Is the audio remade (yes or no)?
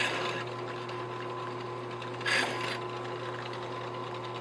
no